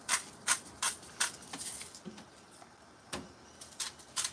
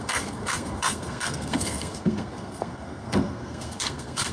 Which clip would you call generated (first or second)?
second